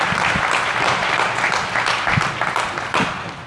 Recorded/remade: recorded